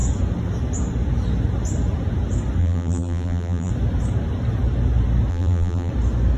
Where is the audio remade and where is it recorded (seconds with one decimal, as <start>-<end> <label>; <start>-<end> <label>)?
0.0-2.6 recorded; 2.6-3.7 remade; 3.7-5.3 recorded; 5.3-5.9 remade; 5.9-6.4 recorded